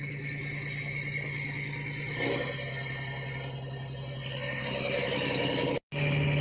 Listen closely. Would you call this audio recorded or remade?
recorded